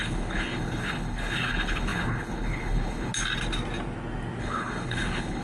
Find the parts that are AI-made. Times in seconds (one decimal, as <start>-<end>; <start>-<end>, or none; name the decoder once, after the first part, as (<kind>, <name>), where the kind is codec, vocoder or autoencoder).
0.0-3.1 (codec, HILCodec); 4.4-5.4

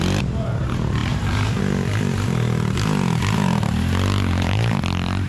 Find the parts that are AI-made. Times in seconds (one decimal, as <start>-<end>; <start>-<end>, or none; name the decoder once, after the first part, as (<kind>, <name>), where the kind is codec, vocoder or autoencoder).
1.0-1.6 (vocoder, BigVGAN v2)

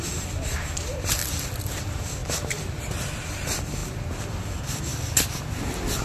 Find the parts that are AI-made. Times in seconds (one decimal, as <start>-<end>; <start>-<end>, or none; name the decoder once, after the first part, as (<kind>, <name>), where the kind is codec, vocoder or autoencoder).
0.0-1.2 (vocoder, BigVGAN v2); 1.7-2.2; 3.1-3.8; 4.4-4.9

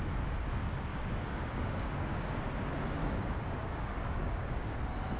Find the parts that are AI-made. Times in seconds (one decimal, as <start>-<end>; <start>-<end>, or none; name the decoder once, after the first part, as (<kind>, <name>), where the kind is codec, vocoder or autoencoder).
0.9-2.4 (codec, DAC); 3.0-4.8

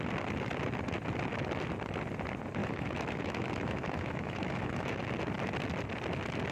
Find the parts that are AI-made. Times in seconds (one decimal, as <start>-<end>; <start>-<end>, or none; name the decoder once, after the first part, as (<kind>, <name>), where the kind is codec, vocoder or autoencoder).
2.6-5.0 (autoencoder, DAC-VAE)

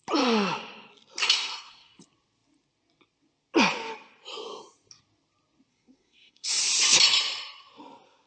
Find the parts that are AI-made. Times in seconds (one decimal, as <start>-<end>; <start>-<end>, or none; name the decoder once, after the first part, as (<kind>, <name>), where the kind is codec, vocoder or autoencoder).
1.2-2.0 (codec, SNAC); 5.7-6.6

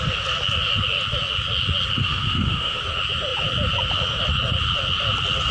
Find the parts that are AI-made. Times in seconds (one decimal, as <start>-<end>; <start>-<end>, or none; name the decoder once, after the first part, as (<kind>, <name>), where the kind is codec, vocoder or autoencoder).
2.0-2.8 (autoencoder, DAC-VAE)